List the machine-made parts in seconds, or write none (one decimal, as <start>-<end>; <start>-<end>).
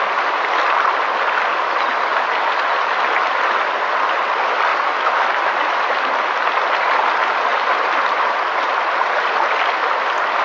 4.7-5.4